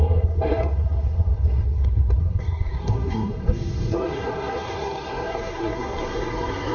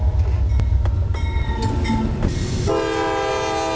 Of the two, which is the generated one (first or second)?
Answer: first